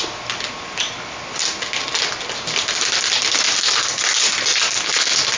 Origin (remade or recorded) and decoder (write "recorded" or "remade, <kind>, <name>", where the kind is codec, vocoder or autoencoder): recorded